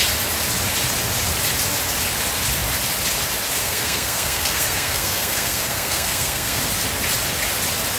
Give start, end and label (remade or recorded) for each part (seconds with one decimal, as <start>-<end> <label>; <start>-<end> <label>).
0.0-3.6 recorded; 3.6-6.6 remade; 6.6-8.0 recorded